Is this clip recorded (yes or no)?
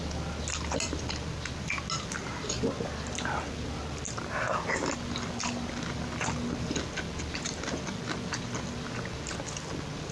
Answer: yes